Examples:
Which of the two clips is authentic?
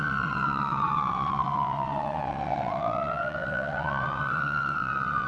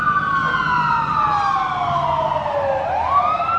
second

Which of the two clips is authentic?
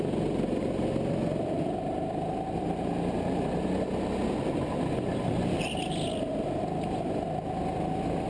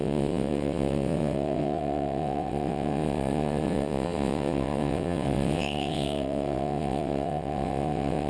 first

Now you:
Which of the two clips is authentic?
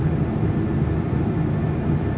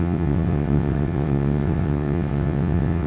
first